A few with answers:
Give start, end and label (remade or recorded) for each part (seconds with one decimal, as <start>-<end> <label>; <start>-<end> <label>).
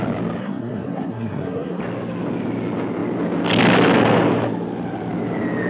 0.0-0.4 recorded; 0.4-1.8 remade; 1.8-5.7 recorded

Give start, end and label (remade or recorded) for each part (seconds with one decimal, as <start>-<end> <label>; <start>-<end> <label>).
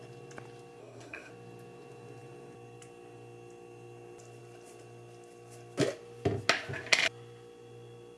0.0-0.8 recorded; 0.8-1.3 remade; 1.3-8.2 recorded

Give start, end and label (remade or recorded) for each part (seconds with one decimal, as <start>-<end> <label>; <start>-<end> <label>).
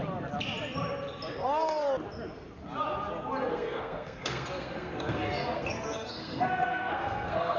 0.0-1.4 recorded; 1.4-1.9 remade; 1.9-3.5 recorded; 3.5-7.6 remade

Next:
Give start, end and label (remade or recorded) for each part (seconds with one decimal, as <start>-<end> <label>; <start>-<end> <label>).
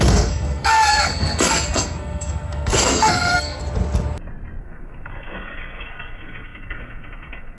0.0-3.6 remade; 3.6-4.6 recorded; 4.6-7.6 remade